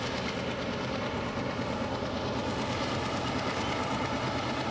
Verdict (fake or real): real